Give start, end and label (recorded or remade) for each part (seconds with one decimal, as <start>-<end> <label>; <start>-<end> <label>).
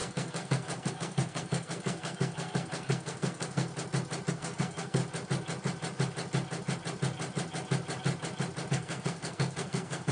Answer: 0.0-3.7 remade; 3.7-4.3 recorded; 4.3-5.0 remade; 5.0-8.7 recorded; 8.7-10.1 remade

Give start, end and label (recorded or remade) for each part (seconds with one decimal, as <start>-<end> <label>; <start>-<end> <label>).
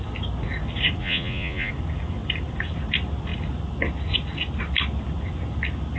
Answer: 0.0-1.0 recorded; 1.0-1.7 remade; 1.7-6.0 recorded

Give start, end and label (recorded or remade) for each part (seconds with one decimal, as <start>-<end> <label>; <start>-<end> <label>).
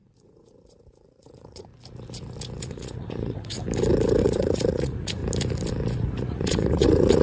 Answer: 0.0-1.7 remade; 1.7-2.6 recorded; 2.6-3.6 remade; 3.6-4.2 recorded; 4.2-5.2 remade; 5.2-6.2 recorded; 6.2-7.2 remade